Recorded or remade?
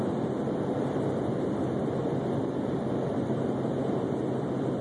recorded